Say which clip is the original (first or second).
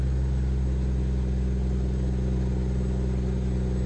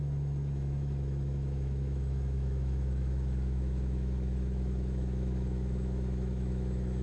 first